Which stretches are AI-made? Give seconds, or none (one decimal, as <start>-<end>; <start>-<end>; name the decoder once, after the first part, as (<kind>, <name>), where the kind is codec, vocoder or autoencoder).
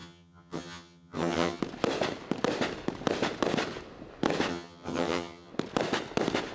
0.0-1.6 (vocoder, HiFi-GAN); 4.5-5.5